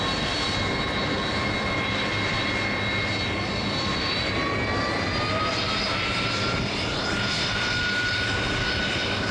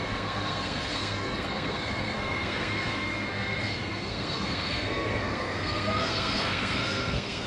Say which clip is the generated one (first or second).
second